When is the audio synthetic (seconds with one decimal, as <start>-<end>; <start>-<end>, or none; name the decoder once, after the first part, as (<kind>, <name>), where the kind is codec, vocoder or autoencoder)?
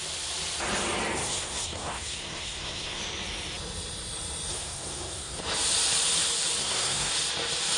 1.2-3.0 (codec, SNAC); 4.5-5.4; 6.6-7.1